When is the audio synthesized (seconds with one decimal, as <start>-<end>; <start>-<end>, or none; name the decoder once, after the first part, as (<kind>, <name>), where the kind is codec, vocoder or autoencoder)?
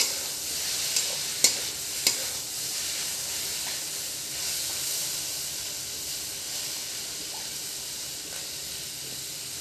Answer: none